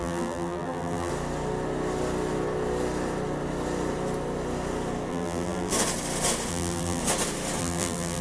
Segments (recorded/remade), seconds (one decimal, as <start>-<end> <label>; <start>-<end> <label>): 0.0-1.1 remade; 1.1-5.1 recorded; 5.1-5.7 remade; 5.7-6.5 recorded; 6.5-7.0 remade; 7.0-7.6 recorded; 7.6-8.2 remade